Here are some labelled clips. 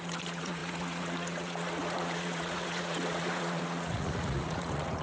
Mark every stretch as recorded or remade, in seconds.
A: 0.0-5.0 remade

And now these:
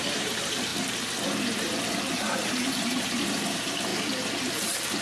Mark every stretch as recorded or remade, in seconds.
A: 0.0-0.7 remade; 0.7-2.1 recorded; 2.1-3.9 remade; 3.9-4.5 recorded; 4.5-5.0 remade

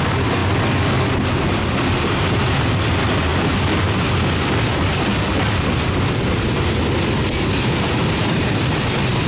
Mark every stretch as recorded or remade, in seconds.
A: 0.0-8.2 recorded; 8.2-8.7 remade; 8.7-9.3 recorded